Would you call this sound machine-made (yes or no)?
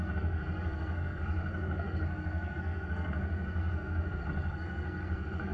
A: yes